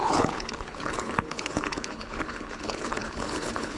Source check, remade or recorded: remade